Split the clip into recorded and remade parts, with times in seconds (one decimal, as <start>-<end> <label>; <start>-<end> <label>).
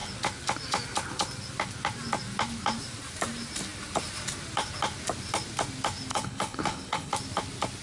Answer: 0.0-6.1 recorded; 6.1-7.1 remade; 7.1-7.8 recorded